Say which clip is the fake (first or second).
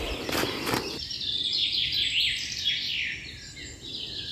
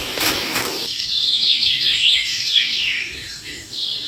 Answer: second